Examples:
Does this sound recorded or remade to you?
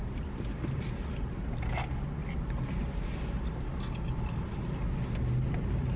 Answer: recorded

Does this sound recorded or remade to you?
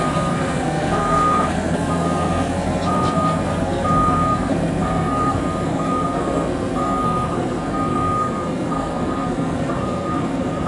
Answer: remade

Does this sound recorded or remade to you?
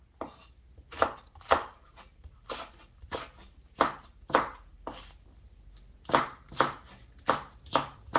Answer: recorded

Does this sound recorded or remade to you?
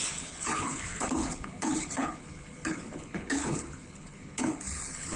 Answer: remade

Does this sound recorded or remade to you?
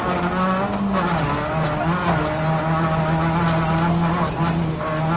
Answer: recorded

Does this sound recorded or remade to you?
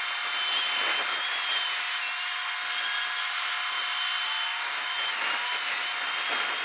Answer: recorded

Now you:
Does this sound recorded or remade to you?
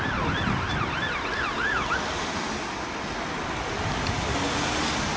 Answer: recorded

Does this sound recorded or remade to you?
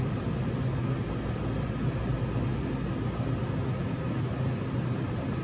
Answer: recorded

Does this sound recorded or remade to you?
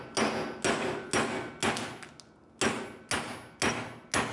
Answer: recorded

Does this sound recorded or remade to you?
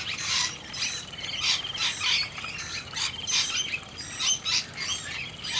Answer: recorded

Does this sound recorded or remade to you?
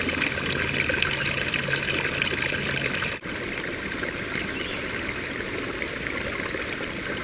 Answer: recorded